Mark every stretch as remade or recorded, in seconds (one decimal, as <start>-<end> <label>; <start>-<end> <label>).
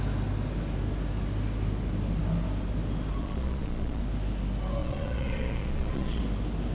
0.0-3.2 recorded; 3.2-4.0 remade; 4.0-4.8 recorded; 4.8-6.2 remade; 6.2-6.7 recorded